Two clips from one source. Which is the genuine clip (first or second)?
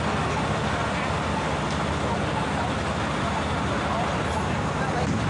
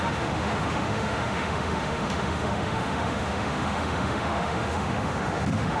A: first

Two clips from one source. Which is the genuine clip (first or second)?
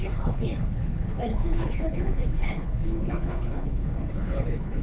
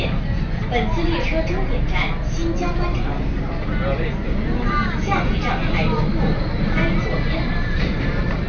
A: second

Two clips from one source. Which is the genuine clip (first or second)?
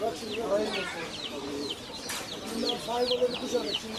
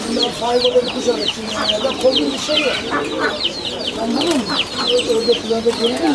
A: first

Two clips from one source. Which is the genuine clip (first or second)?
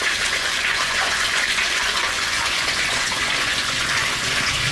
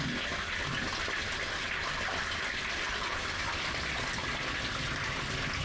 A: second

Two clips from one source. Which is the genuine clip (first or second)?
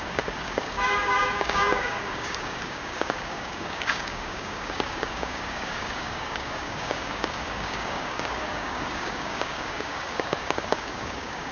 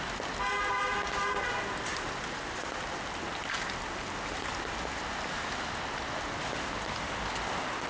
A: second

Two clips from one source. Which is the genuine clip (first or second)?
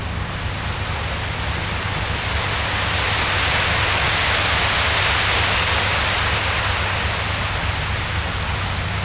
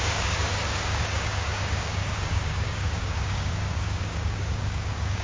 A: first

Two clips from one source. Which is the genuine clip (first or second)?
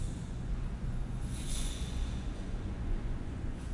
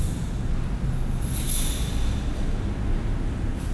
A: second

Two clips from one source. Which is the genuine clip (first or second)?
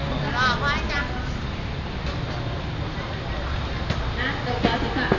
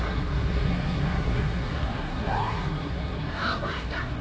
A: first